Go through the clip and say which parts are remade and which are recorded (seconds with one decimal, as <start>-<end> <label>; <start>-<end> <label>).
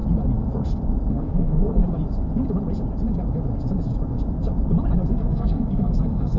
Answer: 0.0-1.1 recorded; 1.1-1.8 remade; 1.8-5.1 recorded; 5.1-6.4 remade